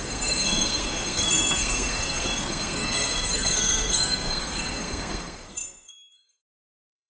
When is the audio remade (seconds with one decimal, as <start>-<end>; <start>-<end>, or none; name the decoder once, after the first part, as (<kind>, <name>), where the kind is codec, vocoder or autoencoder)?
0.0-7.1 (codec, SNAC)